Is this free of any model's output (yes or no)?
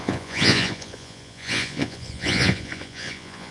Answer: no